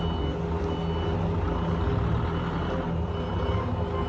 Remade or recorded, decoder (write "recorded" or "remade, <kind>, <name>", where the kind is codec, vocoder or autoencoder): recorded